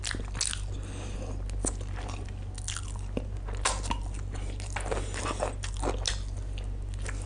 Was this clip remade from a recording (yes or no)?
no